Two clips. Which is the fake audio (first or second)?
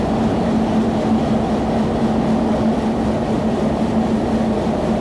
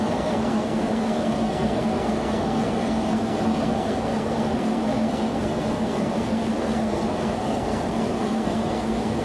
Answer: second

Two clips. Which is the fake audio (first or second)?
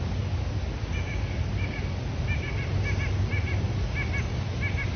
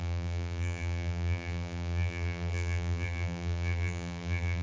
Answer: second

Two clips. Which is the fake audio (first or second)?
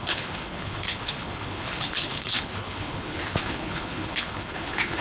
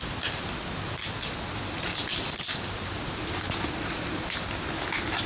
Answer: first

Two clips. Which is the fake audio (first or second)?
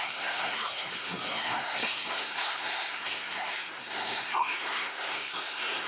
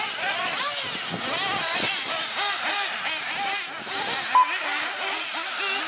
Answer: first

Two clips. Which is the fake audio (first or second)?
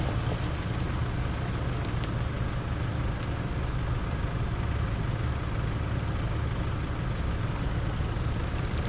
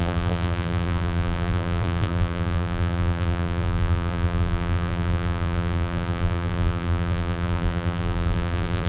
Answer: second